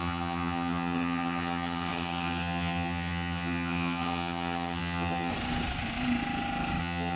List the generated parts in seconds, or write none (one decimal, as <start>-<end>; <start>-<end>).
0.0-5.3; 6.8-7.2